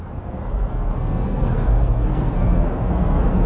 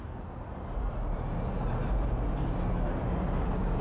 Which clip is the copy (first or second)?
first